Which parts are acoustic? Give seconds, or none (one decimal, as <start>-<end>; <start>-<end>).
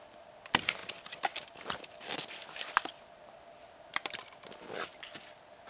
0.0-0.8; 3.0-3.9; 4.5-5.7